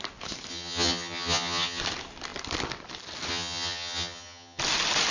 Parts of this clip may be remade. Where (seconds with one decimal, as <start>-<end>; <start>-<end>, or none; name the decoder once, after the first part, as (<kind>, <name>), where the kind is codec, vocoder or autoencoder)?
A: 0.5-1.8 (vocoder, HiFi-GAN); 3.3-4.6